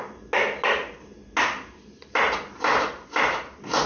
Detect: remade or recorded recorded